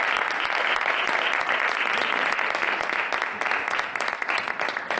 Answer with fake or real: real